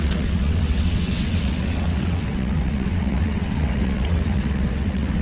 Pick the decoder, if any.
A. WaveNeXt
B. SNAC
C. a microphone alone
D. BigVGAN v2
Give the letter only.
A